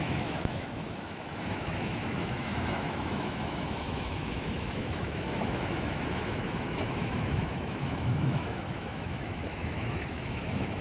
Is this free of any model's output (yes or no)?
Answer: no